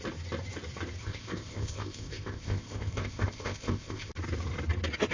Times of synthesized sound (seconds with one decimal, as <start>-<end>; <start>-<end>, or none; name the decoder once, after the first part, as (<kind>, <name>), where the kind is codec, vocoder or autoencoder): 1.0-4.1 (codec, ZipCodec)